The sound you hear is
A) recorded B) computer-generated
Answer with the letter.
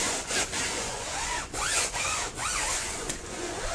B